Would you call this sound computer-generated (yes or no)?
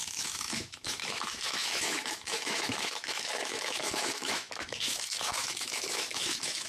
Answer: yes